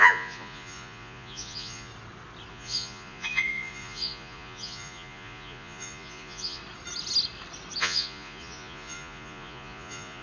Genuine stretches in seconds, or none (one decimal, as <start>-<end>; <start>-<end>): 1.9-2.5; 6.6-7.8